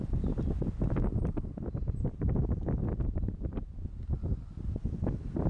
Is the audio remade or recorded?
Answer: recorded